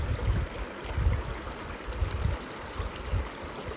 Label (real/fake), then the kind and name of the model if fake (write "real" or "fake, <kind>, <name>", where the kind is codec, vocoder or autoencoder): real